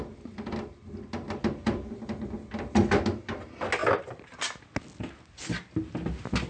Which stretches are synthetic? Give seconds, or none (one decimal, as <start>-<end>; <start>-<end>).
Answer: none